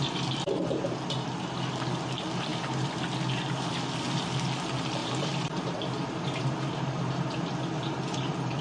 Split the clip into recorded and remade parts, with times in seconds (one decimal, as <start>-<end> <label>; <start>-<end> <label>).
0.0-5.0 recorded; 5.0-7.3 remade; 7.3-8.6 recorded